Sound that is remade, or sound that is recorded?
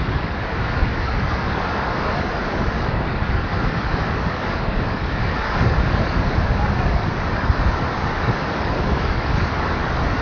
remade